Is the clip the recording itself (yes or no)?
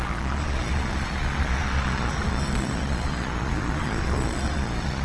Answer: no